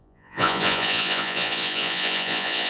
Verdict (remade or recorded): remade